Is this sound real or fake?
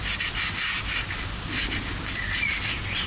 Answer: real